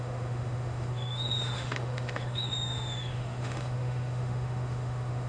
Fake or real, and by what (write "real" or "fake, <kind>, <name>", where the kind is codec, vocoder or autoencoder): fake, autoencoder, DAC-VAE